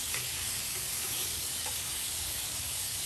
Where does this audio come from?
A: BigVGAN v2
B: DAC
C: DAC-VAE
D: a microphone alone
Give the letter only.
B